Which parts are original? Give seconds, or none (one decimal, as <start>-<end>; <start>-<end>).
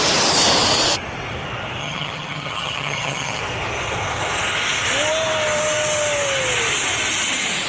0.0-1.8; 3.4-7.7